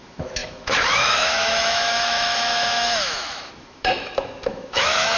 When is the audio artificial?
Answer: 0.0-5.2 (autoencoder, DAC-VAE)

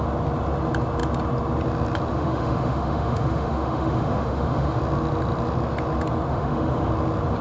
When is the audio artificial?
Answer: 2.1-4.8 (autoencoder, DAC-VAE); 6.3-6.9